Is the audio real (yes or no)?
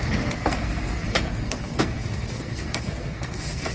no